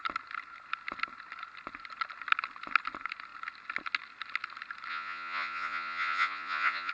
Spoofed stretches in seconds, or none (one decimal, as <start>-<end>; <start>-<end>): 4.9-6.9